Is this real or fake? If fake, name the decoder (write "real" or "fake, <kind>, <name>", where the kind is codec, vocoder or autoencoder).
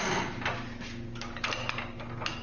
real